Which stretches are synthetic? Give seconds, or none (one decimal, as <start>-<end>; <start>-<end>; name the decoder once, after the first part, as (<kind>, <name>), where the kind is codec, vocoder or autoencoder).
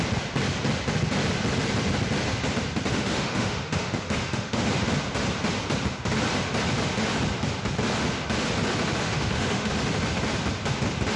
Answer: 2.9-4.7 (autoencoder, DAC-VAE); 9.0-9.7